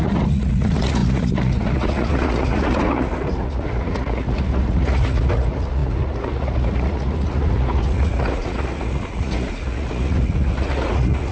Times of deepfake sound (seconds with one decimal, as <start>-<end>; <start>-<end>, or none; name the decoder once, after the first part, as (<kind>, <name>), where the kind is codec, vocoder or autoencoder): 0.0-11.3 (vocoder, Vocos)